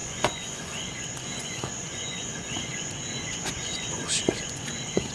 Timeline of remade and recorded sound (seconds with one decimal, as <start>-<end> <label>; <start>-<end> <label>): 0.0-5.1 remade

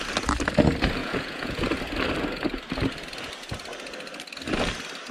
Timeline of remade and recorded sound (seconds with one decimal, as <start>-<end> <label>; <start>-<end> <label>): 0.0-1.0 recorded; 1.0-1.6 remade; 1.6-5.1 recorded

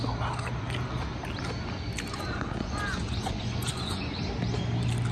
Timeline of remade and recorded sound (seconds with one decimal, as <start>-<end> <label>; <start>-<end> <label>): 0.0-2.1 recorded; 2.1-4.2 remade; 4.2-5.1 recorded

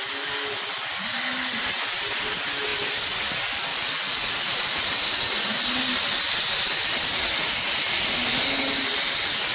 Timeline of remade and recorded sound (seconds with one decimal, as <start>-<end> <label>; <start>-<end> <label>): 0.0-3.7 recorded; 3.7-4.3 remade; 4.3-7.1 recorded; 7.1-7.8 remade; 7.8-9.5 recorded